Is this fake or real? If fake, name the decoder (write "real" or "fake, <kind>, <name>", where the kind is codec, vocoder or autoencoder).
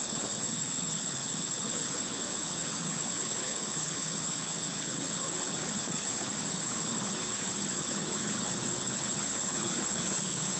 fake, codec, HILCodec